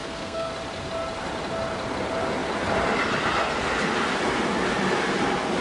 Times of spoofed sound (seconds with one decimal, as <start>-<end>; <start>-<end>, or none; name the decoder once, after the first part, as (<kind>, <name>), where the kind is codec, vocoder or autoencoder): 0.0-0.5 (codec, SNAC)